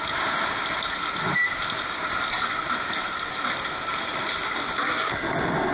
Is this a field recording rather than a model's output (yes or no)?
yes